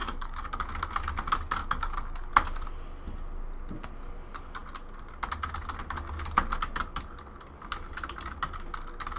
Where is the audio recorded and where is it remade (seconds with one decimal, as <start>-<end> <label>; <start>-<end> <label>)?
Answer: 0.0-0.7 remade; 0.7-1.6 recorded; 1.6-2.3 remade; 2.3-9.2 recorded